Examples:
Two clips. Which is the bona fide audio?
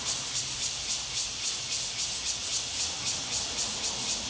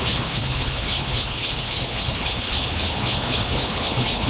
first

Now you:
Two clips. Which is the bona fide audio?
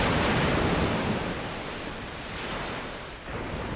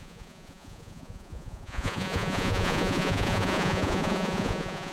first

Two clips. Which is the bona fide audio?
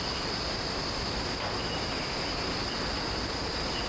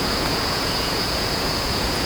first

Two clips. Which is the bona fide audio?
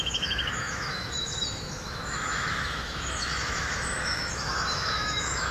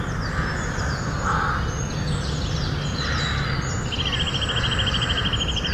second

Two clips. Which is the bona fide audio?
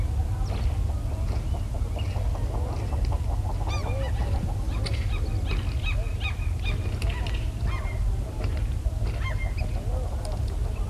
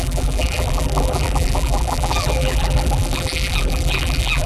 first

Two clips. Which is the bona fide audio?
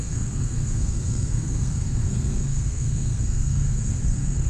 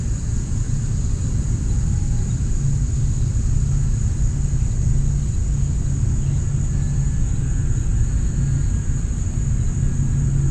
second